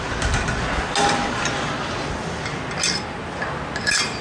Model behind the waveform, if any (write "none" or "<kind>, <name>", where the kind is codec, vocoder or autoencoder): none